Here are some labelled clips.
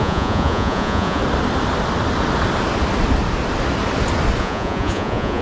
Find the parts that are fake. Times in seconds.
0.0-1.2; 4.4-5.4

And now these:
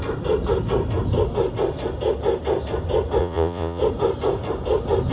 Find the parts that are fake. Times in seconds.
3.2-3.8